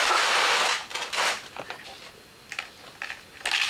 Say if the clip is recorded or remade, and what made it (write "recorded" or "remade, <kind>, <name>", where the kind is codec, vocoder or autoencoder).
recorded